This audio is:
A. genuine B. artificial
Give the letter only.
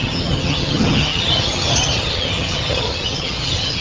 B